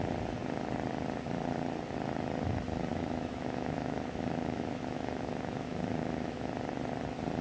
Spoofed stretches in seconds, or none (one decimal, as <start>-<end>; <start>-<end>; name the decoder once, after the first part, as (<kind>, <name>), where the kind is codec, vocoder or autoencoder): 2.9-6.5 (autoencoder, DAC-VAE)